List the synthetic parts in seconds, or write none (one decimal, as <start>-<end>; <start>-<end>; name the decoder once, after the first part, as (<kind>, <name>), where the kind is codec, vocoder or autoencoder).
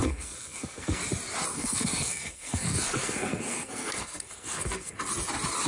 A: 0.0-1.0 (codec, SNAC); 1.5-4.9